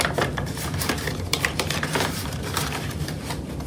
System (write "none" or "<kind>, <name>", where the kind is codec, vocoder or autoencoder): vocoder, BigVGAN v2